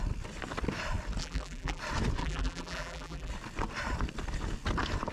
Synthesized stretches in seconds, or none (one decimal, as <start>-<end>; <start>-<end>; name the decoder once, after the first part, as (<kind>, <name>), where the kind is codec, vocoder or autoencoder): 1.2-1.8 (vocoder, BigVGAN v2); 2.2-3.3